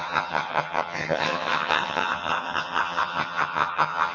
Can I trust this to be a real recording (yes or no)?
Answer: no